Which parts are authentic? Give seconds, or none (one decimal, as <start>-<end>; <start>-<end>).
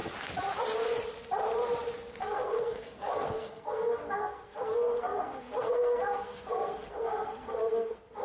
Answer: 0.0-2.2